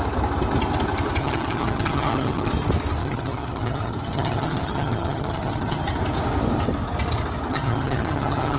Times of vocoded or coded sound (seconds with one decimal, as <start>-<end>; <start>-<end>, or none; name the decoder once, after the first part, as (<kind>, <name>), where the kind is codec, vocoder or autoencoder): 1.2-2.5 (vocoder, HiFi-GAN); 3.0-5.8; 7.5-8.6